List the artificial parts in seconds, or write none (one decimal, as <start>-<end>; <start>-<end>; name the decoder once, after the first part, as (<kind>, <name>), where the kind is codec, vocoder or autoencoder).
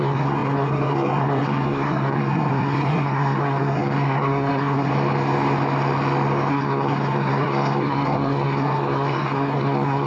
0.0-4.9 (codec, SNAC); 6.5-10.1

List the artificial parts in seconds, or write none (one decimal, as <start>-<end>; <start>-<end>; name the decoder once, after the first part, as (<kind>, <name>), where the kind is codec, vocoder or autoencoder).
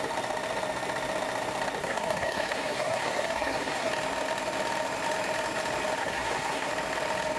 1.8-3.9 (codec, SNAC); 6.0-6.7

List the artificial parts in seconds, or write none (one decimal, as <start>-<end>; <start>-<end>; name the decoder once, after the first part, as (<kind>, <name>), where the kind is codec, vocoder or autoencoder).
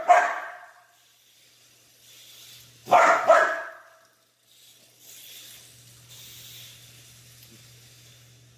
none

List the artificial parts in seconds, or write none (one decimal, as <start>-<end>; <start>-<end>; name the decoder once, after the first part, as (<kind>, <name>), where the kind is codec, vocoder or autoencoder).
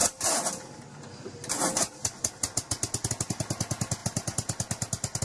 none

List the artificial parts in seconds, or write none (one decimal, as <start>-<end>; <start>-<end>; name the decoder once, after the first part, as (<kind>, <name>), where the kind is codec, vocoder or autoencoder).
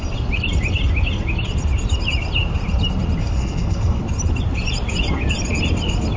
3.2-4.0 (codec, SNAC)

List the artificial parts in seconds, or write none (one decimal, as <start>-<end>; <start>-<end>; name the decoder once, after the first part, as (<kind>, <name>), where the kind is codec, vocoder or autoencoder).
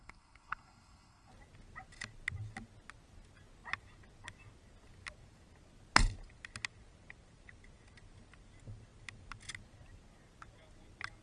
0.0-1.3 (codec, SNAC)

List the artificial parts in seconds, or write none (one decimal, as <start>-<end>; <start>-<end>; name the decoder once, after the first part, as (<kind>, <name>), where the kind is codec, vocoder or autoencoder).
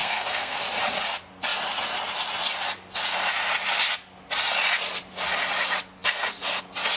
0.0-0.6 (codec, SNAC)